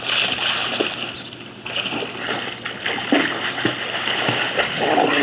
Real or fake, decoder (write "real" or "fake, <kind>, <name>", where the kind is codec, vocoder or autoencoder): real